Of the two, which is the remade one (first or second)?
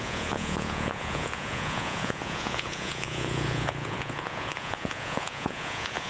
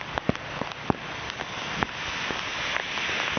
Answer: first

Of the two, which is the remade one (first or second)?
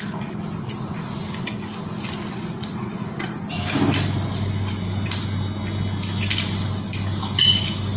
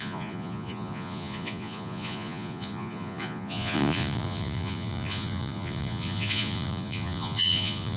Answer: second